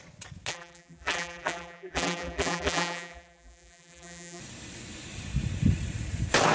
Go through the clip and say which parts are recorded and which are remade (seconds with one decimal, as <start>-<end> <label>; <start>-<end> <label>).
0.0-0.5 recorded; 0.5-4.4 remade; 4.4-6.5 recorded

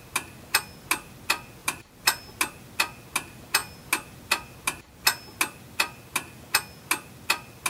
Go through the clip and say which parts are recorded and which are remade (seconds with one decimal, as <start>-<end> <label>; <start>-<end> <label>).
0.0-1.6 recorded; 1.6-2.3 remade; 2.3-7.7 recorded

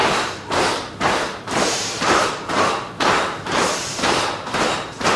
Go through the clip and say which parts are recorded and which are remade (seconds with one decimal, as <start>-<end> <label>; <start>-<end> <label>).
0.0-5.2 remade